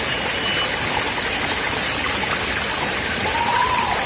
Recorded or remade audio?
recorded